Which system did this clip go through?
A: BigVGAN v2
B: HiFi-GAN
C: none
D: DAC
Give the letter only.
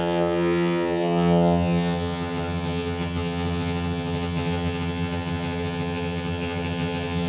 B